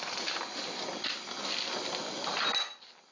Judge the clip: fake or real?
real